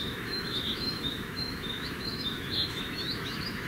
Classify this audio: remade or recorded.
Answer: remade